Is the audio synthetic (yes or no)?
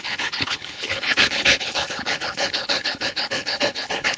yes